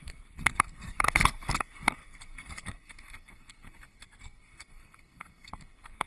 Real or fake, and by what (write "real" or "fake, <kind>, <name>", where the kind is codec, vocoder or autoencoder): fake, codec, SNAC